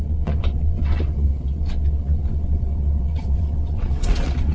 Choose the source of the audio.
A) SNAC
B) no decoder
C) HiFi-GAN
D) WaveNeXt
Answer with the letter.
D